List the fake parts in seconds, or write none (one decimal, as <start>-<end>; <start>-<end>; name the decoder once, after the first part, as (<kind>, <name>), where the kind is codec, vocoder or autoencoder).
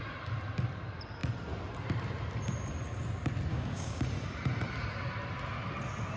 3.5-4.0 (codec, DAC)